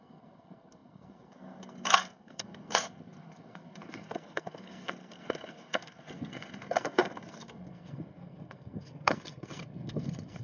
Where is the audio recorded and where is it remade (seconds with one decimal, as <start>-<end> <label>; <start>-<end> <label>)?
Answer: 0.0-10.4 remade